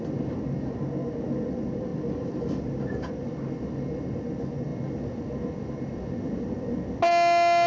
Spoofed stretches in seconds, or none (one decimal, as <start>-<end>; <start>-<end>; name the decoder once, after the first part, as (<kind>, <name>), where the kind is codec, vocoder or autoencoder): 1.9-3.2 (vocoder, BigVGAN v2)